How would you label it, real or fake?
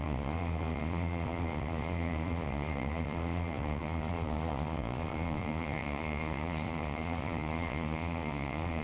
fake